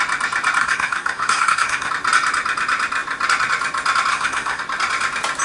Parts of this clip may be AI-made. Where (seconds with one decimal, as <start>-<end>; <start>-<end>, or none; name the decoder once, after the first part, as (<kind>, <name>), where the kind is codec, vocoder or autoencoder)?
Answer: 0.6-1.9 (codec, SNAC); 4.1-4.6